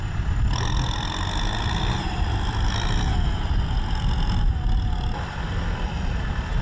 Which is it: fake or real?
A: real